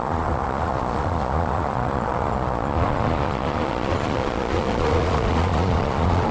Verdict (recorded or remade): remade